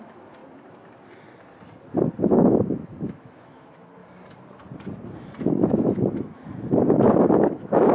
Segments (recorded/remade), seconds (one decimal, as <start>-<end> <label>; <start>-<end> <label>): 0.0-0.4 remade; 0.4-2.2 recorded; 2.2-4.0 remade; 4.0-7.0 recorded; 7.0-7.9 remade